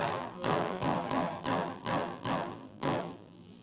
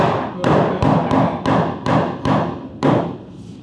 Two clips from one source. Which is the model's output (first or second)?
first